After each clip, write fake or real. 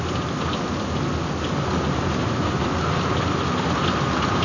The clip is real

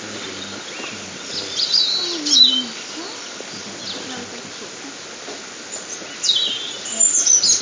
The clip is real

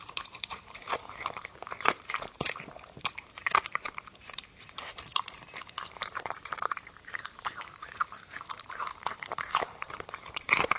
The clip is fake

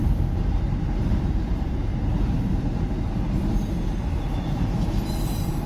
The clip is fake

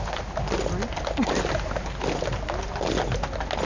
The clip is real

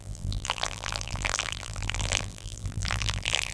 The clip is fake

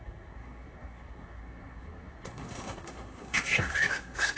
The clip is fake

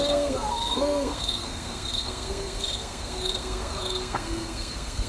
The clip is fake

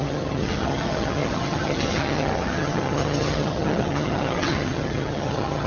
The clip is fake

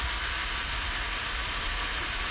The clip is real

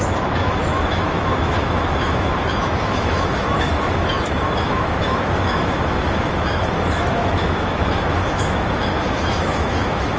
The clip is fake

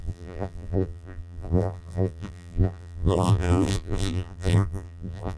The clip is fake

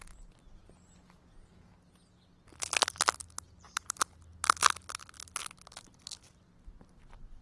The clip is real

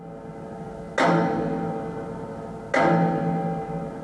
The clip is real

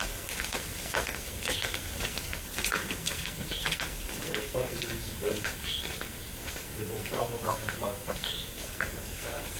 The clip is fake